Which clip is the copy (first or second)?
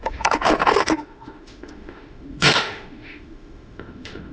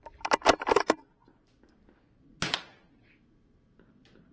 first